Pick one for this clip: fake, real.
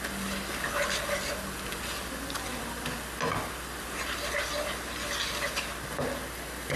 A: real